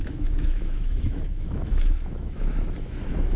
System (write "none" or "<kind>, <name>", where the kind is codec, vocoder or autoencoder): autoencoder, DAC-VAE